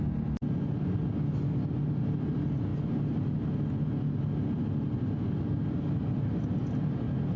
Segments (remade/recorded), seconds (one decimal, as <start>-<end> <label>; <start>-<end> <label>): 0.0-7.4 recorded